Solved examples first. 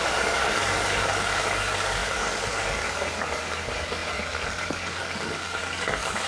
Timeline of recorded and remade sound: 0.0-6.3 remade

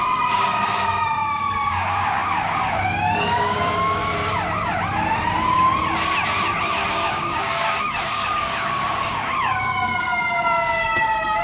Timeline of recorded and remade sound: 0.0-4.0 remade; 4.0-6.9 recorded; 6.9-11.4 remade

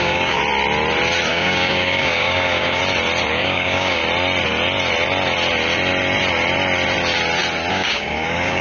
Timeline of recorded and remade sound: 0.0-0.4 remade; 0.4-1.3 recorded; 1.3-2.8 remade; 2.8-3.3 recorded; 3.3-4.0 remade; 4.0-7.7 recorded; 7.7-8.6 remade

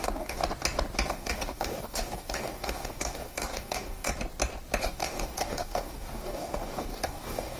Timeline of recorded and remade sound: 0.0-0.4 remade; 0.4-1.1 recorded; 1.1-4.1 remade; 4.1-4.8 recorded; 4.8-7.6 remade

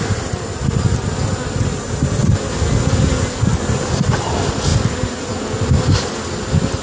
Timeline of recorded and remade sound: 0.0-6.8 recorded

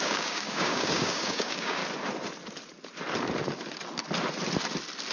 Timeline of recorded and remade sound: 0.0-1.8 remade; 1.8-5.1 recorded

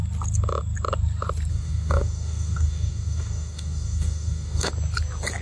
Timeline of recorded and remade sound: 0.0-1.5 recorded; 1.5-4.7 remade; 4.7-5.4 recorded